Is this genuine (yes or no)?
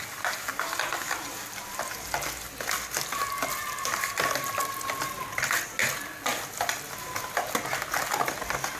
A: yes